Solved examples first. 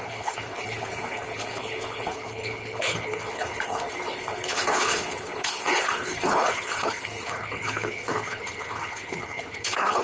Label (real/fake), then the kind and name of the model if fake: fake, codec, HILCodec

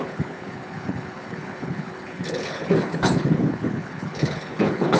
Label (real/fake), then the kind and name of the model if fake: fake, codec, HILCodec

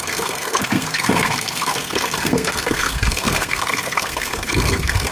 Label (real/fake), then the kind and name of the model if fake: fake, codec, SNAC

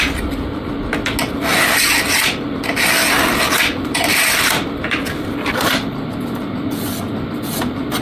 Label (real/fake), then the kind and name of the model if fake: real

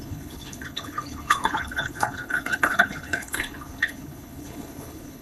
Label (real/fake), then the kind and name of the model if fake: fake, codec, HILCodec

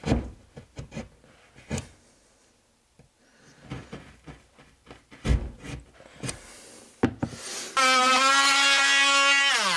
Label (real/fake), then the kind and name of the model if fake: real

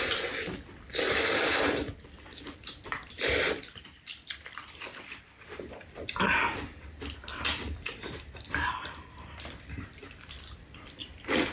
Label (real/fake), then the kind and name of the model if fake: fake, vocoder, BigVGAN v2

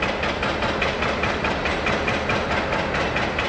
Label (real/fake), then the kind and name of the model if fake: real